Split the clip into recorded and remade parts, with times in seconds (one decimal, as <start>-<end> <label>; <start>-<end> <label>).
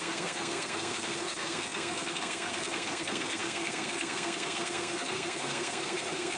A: 0.0-6.4 remade